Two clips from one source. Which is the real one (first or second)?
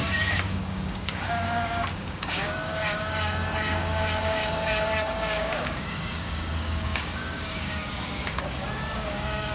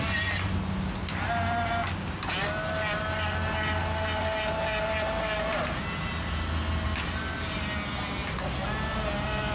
second